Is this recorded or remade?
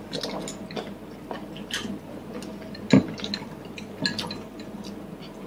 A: recorded